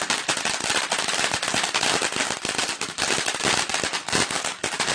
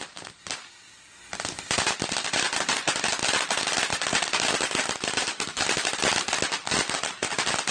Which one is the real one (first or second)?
first